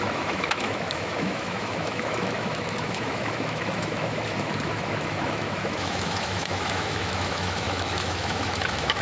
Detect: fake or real fake